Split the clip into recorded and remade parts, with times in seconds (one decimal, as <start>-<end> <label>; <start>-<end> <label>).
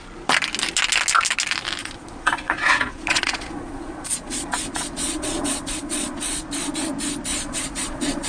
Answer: 0.0-1.8 recorded; 1.8-6.4 remade; 6.4-7.3 recorded; 7.3-8.3 remade